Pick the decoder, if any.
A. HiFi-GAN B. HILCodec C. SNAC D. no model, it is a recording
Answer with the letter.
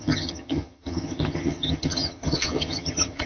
A